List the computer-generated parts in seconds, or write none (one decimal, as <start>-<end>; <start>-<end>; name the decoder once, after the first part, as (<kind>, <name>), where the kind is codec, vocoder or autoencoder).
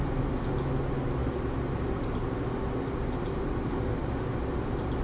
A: none